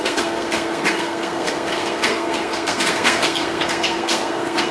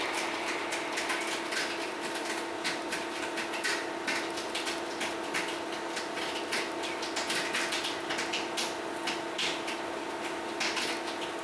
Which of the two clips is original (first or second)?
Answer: second